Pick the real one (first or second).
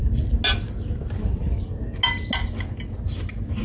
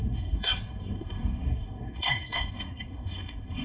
first